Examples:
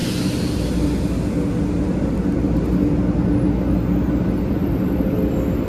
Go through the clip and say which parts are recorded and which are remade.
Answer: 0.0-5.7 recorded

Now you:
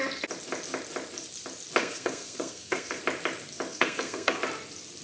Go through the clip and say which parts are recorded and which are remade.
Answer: 0.0-1.8 recorded; 1.8-3.0 remade; 3.0-3.7 recorded; 3.7-4.4 remade; 4.4-5.0 recorded

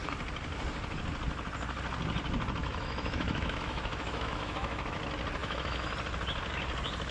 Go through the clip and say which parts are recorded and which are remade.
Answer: 0.0-2.6 recorded; 2.6-5.0 remade; 5.0-5.4 recorded; 5.4-5.9 remade; 5.9-7.1 recorded

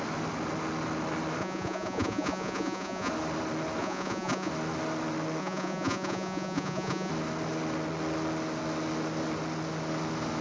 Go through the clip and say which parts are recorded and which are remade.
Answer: 0.0-1.4 recorded; 1.4-3.1 remade; 3.1-3.8 recorded; 3.8-4.5 remade; 4.5-5.4 recorded; 5.4-7.1 remade; 7.1-10.4 recorded

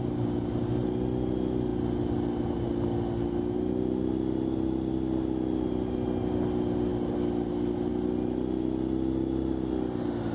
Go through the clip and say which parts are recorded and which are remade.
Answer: 0.0-10.3 recorded

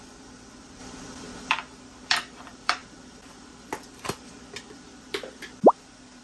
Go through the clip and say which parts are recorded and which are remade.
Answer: 0.0-6.2 remade

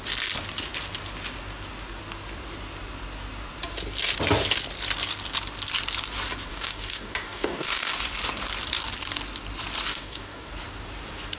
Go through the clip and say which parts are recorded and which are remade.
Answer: 0.0-6.5 recorded; 6.5-7.9 remade; 7.9-9.9 recorded; 9.9-10.5 remade; 10.5-11.4 recorded

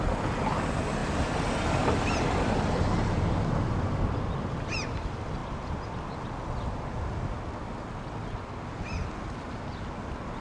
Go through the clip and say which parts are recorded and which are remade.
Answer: 0.0-10.4 recorded